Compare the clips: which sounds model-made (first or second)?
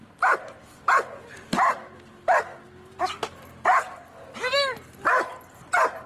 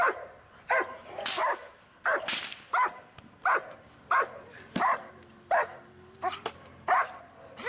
second